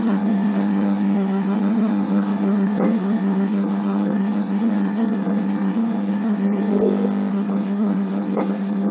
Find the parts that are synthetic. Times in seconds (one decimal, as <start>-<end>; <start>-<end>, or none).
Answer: 0.0-6.7; 7.3-8.9